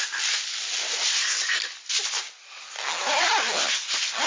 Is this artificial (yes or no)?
no